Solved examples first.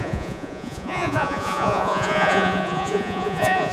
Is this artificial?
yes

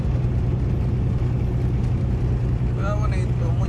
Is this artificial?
no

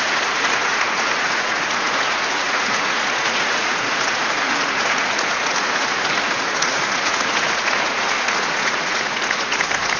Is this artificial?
yes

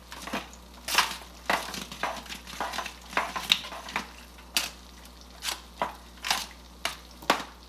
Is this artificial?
no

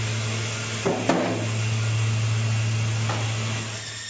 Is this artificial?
no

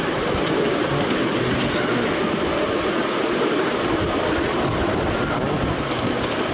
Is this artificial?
no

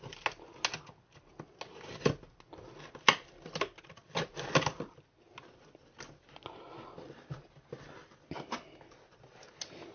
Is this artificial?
no